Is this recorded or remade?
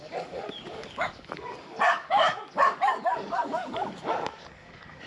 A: remade